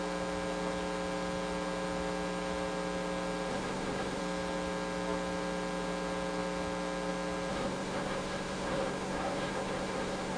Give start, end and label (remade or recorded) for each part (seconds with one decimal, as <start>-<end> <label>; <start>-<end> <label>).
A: 0.0-3.5 recorded; 3.5-4.2 remade; 4.2-7.5 recorded; 7.5-10.4 remade